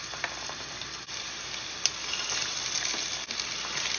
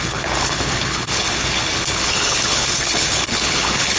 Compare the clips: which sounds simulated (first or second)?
second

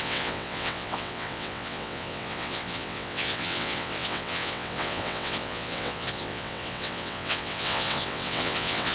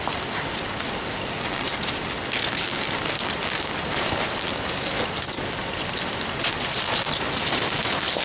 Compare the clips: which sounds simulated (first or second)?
first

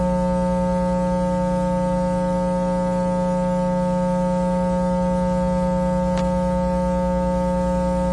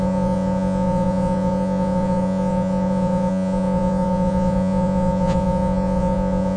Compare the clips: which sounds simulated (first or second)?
second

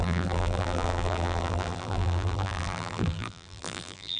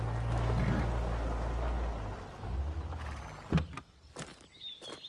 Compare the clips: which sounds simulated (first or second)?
first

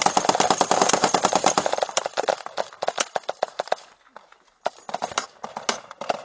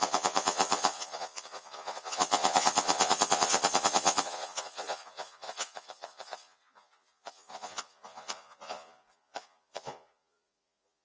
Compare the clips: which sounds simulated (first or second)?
second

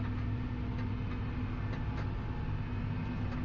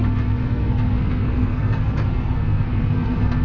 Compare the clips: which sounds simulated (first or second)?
second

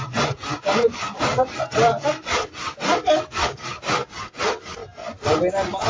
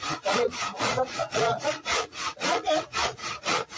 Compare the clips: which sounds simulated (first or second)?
second